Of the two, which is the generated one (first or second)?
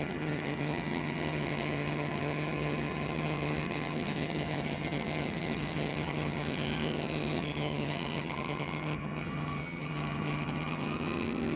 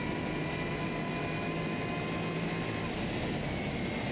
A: first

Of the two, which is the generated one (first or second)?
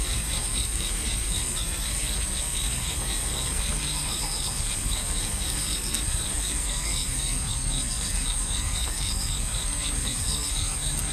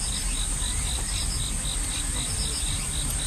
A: first